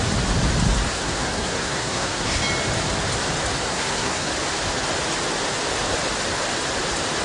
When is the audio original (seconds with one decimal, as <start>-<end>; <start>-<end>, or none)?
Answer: 0.0-0.9; 2.4-3.6; 4.3-7.2